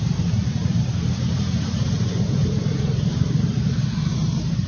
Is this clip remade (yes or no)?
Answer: yes